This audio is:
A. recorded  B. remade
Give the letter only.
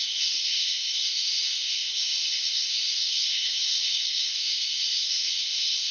B